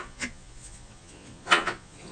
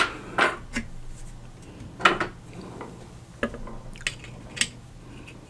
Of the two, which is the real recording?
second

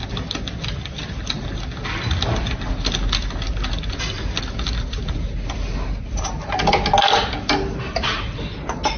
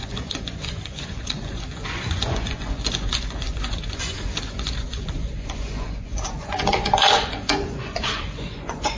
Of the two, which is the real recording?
first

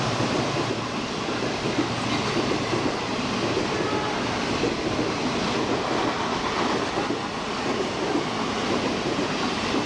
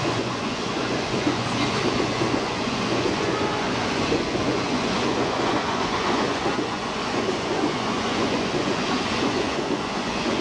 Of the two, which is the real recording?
first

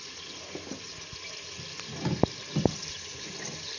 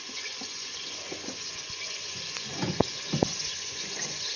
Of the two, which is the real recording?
first